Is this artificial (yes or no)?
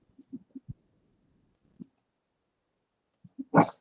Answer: no